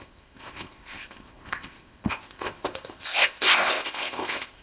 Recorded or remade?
remade